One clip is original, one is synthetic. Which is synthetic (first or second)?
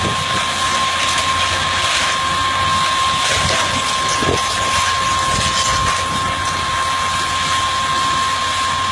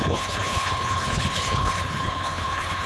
second